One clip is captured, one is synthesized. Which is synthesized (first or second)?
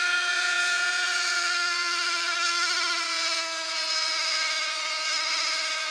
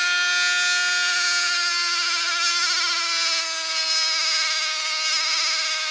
first